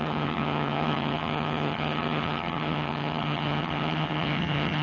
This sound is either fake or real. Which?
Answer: fake